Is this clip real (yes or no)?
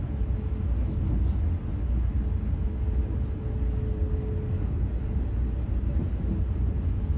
yes